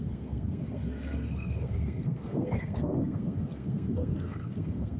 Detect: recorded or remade remade